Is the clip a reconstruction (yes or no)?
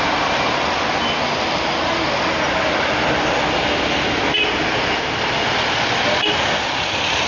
no